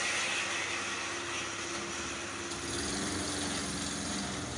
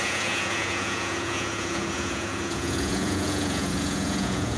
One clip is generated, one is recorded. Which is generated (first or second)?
second